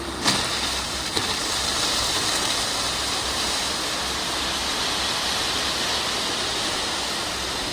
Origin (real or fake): real